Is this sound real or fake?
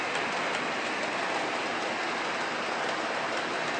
real